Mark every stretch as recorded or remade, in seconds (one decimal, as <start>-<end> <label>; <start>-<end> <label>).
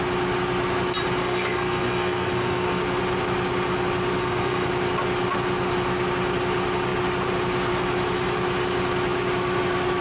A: 0.0-1.2 recorded; 1.2-2.8 remade; 2.8-4.2 recorded; 4.2-4.7 remade; 4.7-10.0 recorded